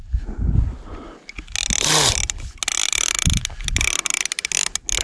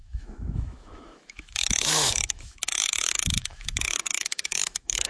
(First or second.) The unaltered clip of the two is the first